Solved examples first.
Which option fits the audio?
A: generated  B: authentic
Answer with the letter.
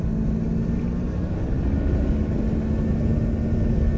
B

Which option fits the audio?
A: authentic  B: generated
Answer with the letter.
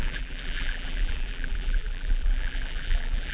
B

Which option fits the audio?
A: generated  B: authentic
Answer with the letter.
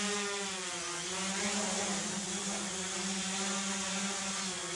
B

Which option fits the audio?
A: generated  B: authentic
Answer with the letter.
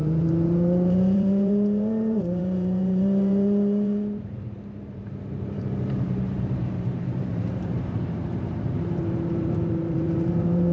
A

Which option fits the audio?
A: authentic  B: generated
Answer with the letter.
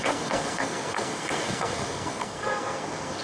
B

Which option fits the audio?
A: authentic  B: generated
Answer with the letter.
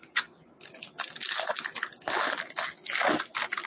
A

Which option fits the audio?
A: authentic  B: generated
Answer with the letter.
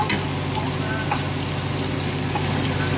A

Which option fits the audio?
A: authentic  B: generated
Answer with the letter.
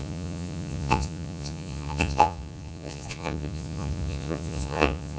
B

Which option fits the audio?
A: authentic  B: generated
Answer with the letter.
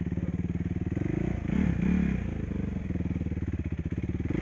A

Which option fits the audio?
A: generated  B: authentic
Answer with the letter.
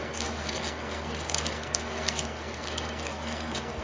A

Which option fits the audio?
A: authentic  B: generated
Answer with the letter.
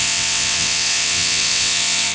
B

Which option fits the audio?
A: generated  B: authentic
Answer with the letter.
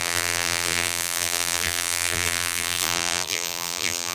A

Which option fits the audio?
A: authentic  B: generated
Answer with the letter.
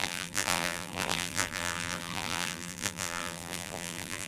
B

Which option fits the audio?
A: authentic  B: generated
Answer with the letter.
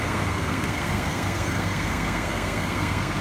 B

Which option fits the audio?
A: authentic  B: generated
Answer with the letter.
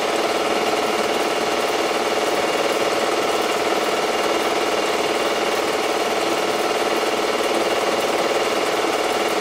A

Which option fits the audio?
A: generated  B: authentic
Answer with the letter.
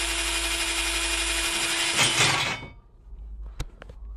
B